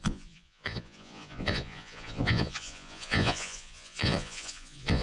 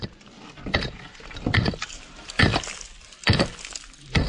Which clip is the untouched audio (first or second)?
second